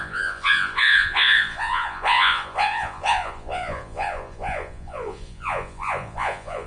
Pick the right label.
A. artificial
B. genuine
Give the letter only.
A